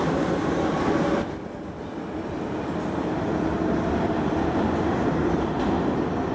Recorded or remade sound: remade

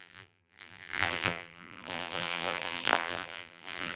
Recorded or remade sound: remade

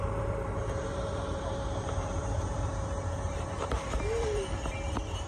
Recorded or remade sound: remade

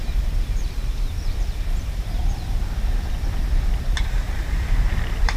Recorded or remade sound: remade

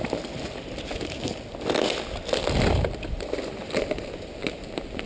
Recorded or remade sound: recorded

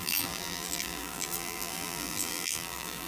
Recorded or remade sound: remade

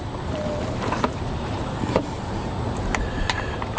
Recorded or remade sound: remade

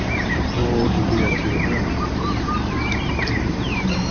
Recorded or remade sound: remade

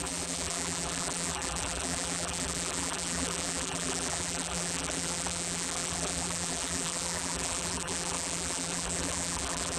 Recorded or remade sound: remade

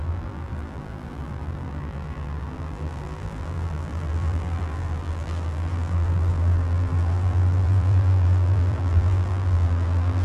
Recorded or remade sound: remade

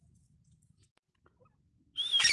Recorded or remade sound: recorded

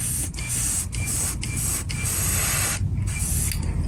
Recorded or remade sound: recorded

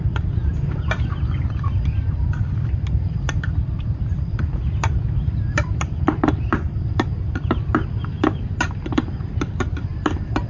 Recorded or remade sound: remade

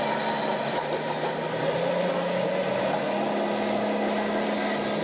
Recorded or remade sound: recorded